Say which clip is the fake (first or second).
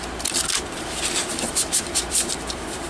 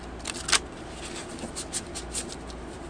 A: first